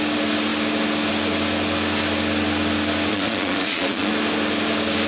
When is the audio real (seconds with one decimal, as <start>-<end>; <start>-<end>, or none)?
0.0-3.1; 4.1-5.1